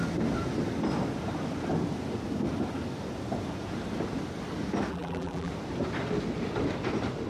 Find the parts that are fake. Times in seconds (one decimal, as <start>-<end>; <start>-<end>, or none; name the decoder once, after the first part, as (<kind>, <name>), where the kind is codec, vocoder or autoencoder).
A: 4.9-5.5 (vocoder, BigVGAN v2)